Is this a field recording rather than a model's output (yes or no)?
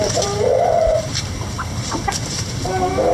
no